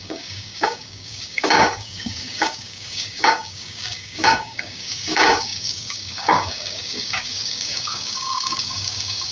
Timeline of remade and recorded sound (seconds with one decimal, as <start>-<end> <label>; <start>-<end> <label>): 0.0-9.3 remade